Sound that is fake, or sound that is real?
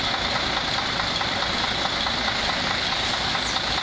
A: real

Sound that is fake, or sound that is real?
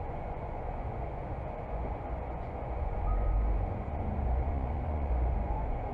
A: fake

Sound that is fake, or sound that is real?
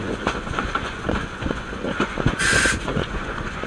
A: fake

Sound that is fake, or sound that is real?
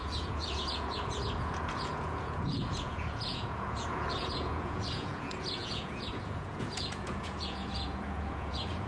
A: fake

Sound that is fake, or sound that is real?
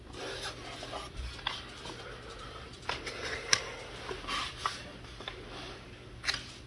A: real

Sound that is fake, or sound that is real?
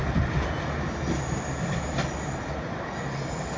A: real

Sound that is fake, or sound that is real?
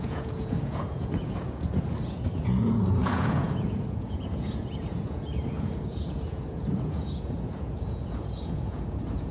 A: fake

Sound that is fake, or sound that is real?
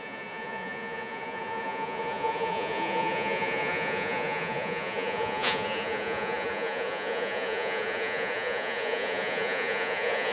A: fake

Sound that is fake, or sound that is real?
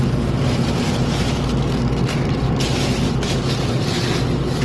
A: real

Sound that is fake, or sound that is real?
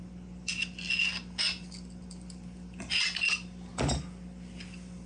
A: real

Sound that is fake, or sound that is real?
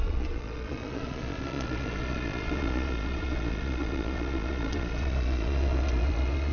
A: fake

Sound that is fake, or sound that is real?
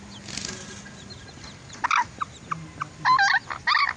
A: real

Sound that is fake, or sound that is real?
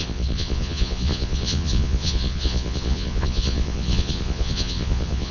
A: fake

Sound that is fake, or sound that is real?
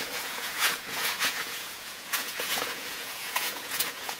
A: fake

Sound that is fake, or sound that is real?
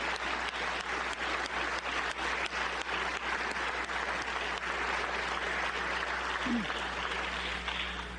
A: real